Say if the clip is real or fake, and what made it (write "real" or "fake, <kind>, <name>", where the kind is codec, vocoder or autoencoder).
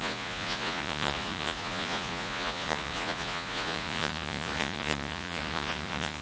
fake, vocoder, Vocos